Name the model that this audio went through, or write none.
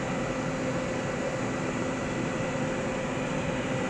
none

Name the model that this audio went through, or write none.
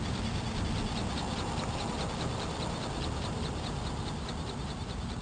none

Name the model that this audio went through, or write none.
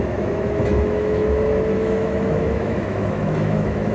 autoencoder, DAC-VAE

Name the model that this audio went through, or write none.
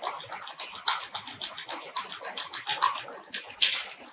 none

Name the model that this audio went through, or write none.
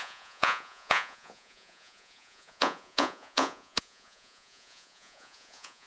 vocoder, Vocos